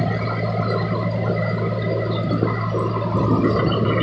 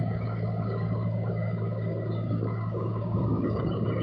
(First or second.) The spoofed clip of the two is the second